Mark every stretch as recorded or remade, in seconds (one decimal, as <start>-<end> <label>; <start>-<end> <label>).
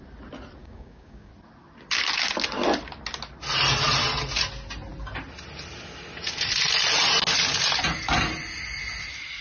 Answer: 0.0-0.6 recorded; 0.6-1.3 remade; 1.3-9.4 recorded